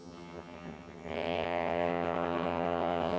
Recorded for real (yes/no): no